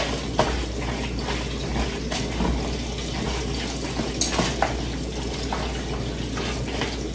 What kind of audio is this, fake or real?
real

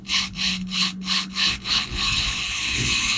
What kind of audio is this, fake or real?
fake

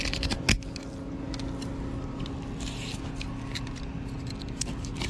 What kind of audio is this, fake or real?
real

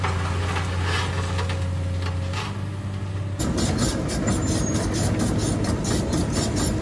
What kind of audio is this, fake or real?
real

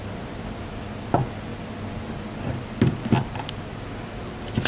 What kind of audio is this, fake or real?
real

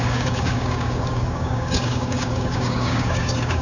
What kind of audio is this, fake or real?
fake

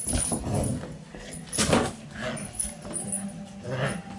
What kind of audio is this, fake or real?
real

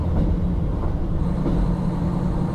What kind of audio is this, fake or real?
real